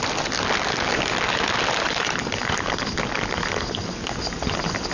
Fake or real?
real